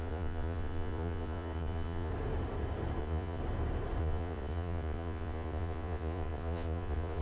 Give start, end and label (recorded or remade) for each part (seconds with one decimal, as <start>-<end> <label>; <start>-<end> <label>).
0.0-2.1 remade; 2.1-3.0 recorded; 3.0-3.4 remade; 3.4-4.0 recorded; 4.0-7.2 remade